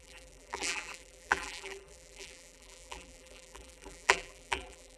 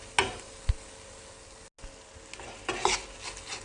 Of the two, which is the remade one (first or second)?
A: first